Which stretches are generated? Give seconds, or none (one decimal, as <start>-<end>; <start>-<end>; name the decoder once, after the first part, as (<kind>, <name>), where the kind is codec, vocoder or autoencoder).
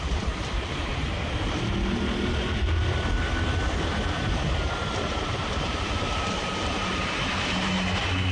0.0-1.7 (vocoder, BigVGAN v2); 5.1-8.3